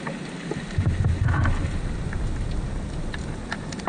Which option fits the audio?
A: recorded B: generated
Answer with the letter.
A